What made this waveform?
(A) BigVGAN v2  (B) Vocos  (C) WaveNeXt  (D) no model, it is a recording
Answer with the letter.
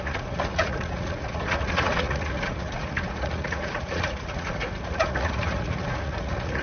B